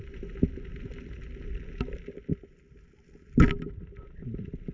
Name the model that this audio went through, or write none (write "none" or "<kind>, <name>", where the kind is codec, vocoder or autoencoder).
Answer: none